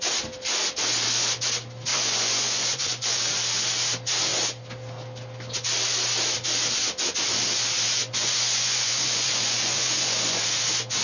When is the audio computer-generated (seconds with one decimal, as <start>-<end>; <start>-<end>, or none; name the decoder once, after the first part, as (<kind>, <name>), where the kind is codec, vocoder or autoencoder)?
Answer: 1.9-3.2 (vocoder, Vocos); 8.0-10.4